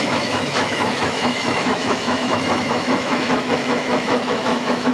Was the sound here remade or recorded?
remade